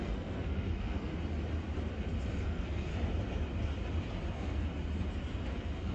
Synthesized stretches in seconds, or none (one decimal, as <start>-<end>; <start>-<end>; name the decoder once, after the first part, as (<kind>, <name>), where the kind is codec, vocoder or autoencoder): 0.0-1.1 (codec, SNAC); 2.4-2.9; 4.3-4.7; 5.5-5.9